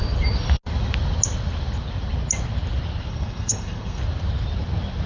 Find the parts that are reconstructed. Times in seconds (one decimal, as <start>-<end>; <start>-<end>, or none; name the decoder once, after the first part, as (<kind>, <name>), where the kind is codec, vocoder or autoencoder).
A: 3.1-4.0 (codec, SNAC)